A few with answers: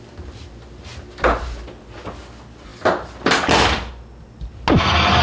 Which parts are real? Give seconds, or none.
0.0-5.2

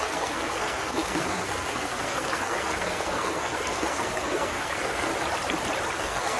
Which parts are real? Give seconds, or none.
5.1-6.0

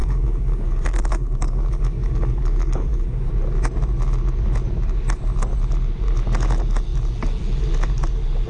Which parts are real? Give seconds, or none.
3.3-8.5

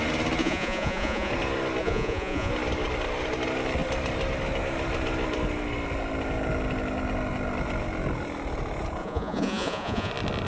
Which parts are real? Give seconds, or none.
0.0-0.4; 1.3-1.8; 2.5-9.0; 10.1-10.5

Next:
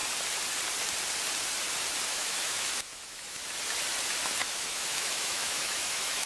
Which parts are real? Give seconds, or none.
0.0-2.1; 3.4-4.4